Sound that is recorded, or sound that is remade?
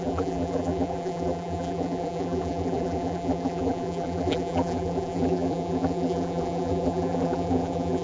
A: remade